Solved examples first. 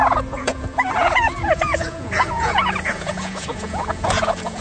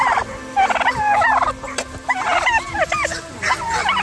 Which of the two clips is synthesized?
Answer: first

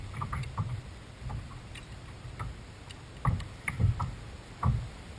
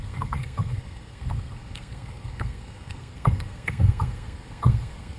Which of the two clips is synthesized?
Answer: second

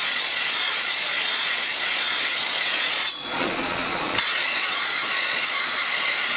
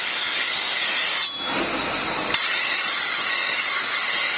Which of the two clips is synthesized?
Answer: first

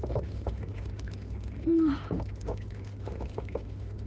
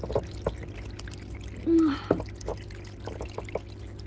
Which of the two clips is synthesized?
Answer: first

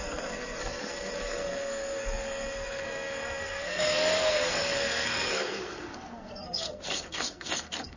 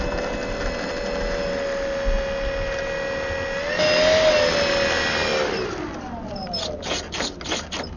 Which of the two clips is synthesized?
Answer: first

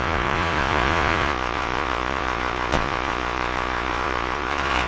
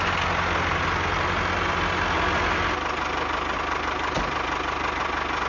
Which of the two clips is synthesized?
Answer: first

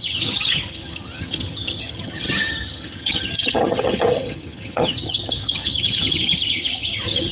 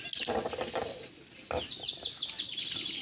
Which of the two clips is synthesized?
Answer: first